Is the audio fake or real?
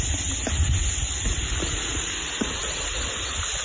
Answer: real